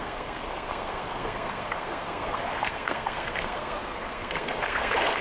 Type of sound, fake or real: fake